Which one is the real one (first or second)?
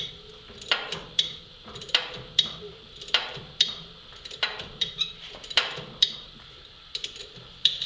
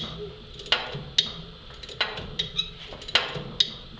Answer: second